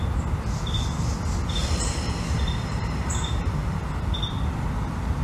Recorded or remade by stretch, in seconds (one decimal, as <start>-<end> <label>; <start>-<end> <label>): 0.0-1.6 recorded; 1.6-3.8 remade; 3.8-5.2 recorded